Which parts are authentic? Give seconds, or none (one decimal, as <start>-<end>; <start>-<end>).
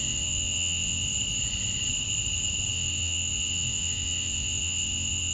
1.1-2.7